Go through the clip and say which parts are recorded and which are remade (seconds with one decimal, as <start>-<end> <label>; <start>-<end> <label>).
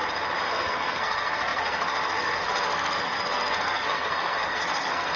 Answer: 0.0-0.5 recorded; 0.5-5.2 remade